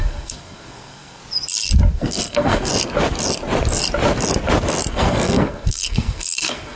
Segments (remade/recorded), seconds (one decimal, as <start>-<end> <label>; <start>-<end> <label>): 0.0-1.2 remade; 1.2-1.9 recorded; 1.9-2.7 remade; 2.7-4.9 recorded; 4.9-6.8 remade